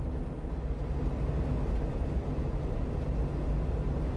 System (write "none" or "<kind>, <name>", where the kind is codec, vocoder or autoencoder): none